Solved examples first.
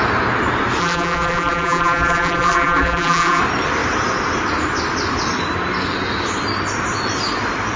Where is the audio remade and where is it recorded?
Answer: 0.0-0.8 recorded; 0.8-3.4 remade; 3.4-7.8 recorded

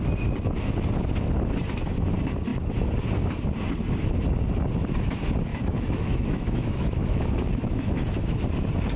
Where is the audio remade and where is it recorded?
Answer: 0.0-5.5 recorded; 5.5-7.9 remade; 7.9-9.0 recorded

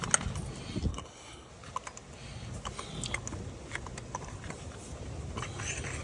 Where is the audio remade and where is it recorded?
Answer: 0.0-0.9 recorded; 0.9-1.5 remade; 1.5-6.0 recorded

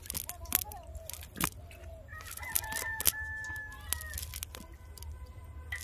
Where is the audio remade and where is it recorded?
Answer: 0.0-5.8 recorded

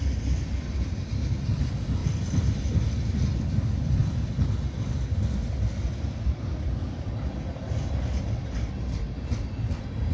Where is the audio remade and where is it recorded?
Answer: 0.0-10.1 recorded